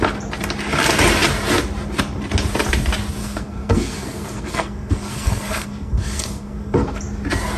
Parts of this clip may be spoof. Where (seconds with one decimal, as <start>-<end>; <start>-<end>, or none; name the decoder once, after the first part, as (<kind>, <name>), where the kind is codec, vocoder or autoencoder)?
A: 3.2-7.0 (codec, SNAC)